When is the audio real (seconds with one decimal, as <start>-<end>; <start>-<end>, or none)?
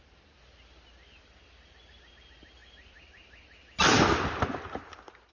0.0-5.3